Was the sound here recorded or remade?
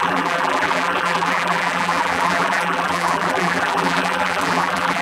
remade